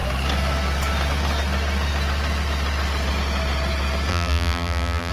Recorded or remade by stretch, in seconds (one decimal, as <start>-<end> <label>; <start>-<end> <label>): 0.0-4.1 recorded; 4.1-5.1 remade